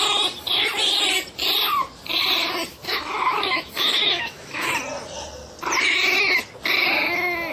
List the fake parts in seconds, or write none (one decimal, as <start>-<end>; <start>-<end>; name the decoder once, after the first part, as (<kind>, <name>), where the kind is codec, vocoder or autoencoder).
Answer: 2.7-4.7 (autoencoder, DAC-VAE)